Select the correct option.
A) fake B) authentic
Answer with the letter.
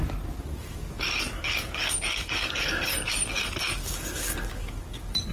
A